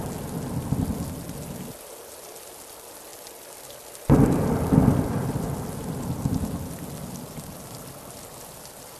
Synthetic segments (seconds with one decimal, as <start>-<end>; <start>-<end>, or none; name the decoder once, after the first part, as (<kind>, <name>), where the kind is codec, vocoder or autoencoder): none